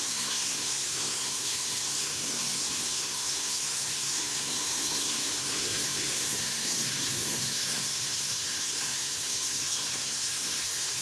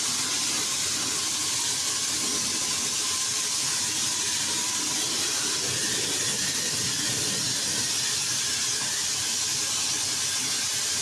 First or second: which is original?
second